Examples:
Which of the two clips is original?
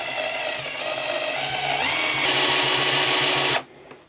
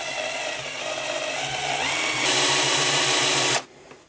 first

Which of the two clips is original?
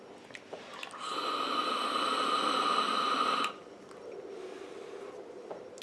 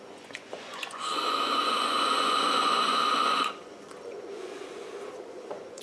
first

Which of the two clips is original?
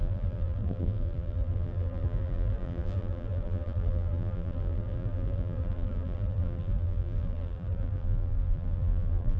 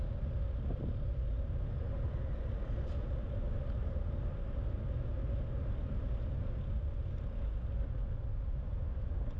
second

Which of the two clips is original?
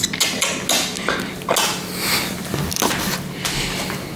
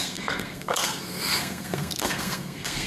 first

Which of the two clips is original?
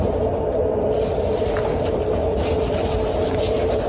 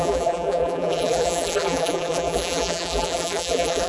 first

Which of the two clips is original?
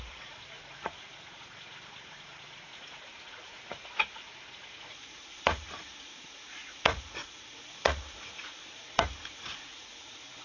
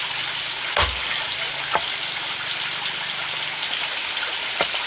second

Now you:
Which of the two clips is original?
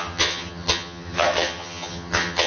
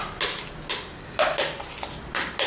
second